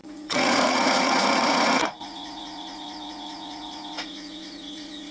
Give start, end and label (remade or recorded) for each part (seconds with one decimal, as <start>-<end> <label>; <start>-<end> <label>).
0.0-5.1 remade